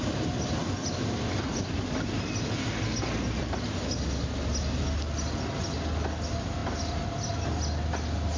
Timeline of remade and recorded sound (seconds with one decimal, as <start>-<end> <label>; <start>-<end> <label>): 0.0-8.4 recorded